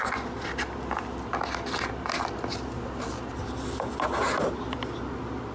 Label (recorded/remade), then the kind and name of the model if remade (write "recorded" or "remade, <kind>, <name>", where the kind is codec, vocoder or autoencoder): recorded